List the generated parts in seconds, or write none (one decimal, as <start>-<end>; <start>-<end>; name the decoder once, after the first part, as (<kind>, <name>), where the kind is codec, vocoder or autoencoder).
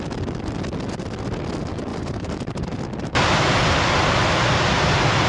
1.9-2.8 (vocoder, BigVGAN v2)